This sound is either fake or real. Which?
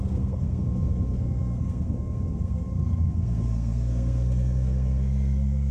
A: fake